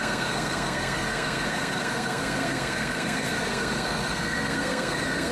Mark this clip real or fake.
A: fake